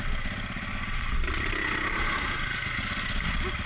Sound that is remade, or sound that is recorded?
recorded